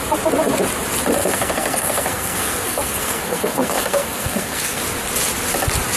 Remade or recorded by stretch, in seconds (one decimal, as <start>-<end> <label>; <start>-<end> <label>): 0.0-1.2 recorded; 1.2-4.8 remade; 4.8-6.0 recorded